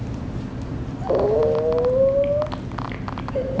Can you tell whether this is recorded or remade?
recorded